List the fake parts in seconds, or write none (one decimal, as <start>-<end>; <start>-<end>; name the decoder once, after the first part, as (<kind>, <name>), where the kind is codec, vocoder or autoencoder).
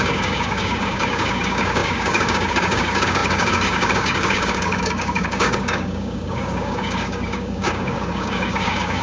0.0-9.0 (codec, DAC)